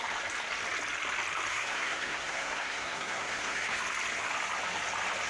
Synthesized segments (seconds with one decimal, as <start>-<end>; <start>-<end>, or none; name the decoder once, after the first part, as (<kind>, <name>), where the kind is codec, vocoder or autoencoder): 1.5-3.8 (codec, SNAC)